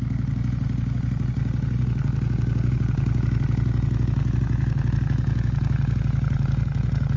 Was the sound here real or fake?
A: real